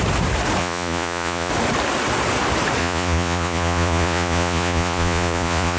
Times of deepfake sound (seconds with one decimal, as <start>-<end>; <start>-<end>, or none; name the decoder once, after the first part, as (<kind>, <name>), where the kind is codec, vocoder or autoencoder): 0.6-1.5 (vocoder, Vocos); 2.8-5.8